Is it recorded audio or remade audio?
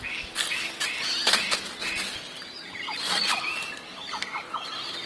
remade